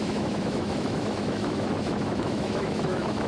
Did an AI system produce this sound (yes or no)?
yes